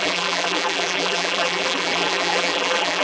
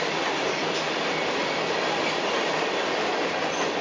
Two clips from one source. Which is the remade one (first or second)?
first